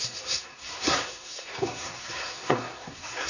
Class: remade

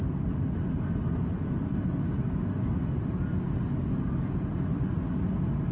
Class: recorded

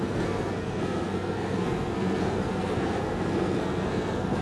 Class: remade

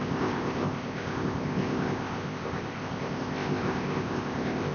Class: remade